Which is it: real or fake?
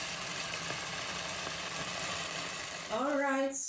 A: real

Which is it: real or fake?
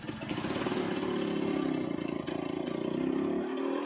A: real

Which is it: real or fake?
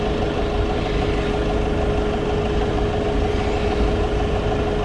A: real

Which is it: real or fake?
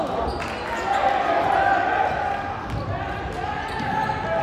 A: real